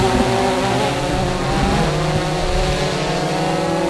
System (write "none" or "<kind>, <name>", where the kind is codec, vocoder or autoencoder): none